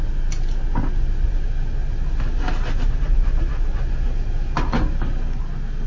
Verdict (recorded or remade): recorded